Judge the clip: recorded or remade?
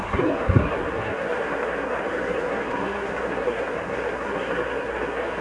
remade